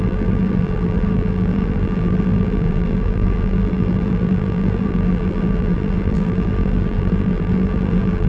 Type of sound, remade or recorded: remade